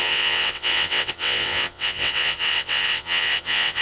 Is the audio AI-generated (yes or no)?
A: yes